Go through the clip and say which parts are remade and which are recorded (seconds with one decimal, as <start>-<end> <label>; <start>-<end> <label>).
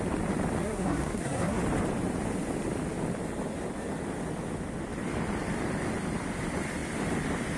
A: 0.0-0.6 recorded; 0.6-1.6 remade; 1.6-7.6 recorded